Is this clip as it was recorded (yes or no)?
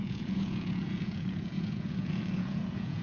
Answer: no